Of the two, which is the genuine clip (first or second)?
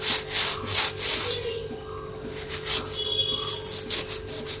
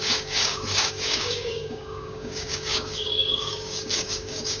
first